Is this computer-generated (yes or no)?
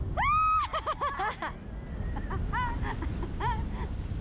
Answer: no